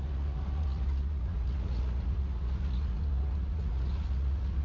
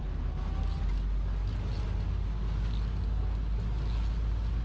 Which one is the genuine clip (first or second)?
second